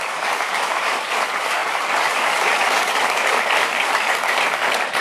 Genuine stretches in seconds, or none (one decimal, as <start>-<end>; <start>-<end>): none